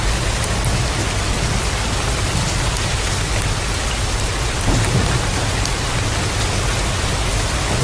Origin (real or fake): real